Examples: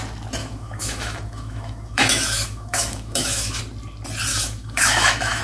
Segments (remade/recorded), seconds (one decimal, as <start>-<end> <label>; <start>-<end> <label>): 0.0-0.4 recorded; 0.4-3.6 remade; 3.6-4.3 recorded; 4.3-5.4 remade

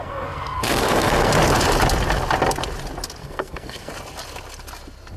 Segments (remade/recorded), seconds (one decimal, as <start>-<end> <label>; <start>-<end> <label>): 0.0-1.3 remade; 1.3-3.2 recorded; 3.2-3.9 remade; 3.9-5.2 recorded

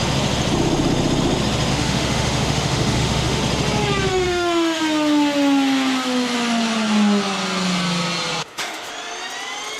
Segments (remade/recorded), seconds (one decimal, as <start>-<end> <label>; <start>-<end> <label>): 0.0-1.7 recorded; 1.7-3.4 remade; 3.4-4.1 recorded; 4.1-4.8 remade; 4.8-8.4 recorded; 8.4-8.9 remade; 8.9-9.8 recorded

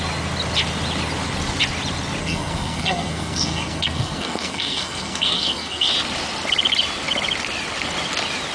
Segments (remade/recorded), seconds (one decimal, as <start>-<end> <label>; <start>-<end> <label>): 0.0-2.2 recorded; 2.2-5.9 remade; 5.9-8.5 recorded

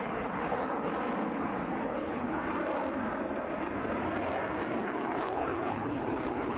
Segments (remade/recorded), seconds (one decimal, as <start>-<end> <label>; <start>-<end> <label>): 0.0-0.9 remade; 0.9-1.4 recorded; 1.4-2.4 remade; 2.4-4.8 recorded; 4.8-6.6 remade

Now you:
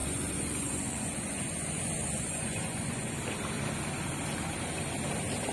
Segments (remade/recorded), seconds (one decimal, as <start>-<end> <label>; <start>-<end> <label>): 0.0-3.1 remade; 3.1-5.5 recorded